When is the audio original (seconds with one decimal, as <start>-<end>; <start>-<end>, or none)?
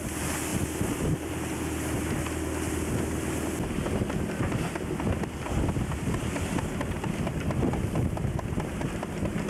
0.0-9.5